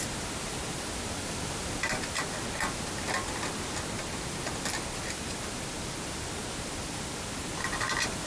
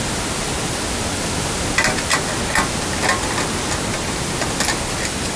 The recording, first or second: second